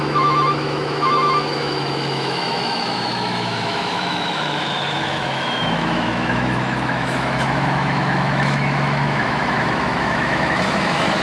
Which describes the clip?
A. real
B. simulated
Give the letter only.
B